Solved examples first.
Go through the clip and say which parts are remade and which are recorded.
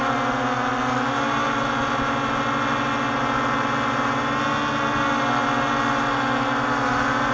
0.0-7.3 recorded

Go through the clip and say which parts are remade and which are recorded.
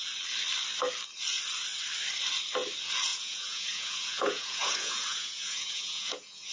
0.0-3.1 recorded; 3.1-6.5 remade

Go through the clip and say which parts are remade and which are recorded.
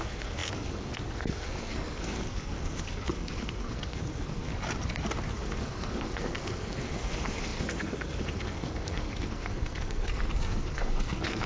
0.0-4.5 remade; 4.5-5.3 recorded; 5.3-11.5 remade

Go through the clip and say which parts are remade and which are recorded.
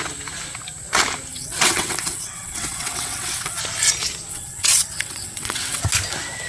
0.0-1.3 recorded; 1.3-3.6 remade; 3.6-4.3 recorded; 4.3-5.8 remade; 5.8-6.5 recorded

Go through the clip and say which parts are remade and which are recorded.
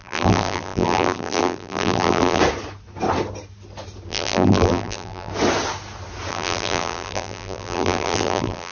0.0-2.4 remade; 2.4-4.1 recorded; 4.1-5.3 remade; 5.3-6.3 recorded; 6.3-8.7 remade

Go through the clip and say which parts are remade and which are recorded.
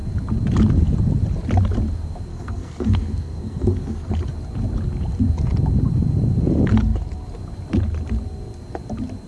0.0-2.3 recorded; 2.3-4.1 remade; 4.1-9.3 recorded